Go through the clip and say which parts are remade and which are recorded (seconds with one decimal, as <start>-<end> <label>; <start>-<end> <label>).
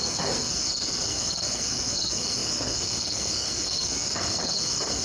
0.0-5.0 remade